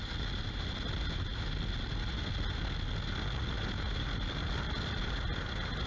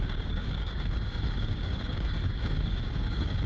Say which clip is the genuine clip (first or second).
first